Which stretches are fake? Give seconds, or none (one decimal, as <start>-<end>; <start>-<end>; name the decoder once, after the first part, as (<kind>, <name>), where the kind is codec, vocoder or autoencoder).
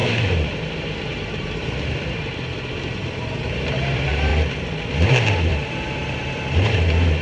0.0-4.3 (vocoder, BigVGAN v2); 5.1-7.2